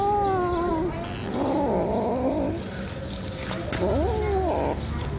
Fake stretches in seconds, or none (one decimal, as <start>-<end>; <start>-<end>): none